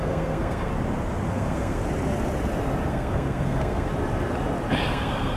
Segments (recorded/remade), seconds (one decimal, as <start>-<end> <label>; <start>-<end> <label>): 0.0-0.7 remade; 0.7-1.3 recorded; 1.3-1.8 remade; 1.8-2.9 recorded; 2.9-3.9 remade; 3.9-4.9 recorded; 4.9-5.4 remade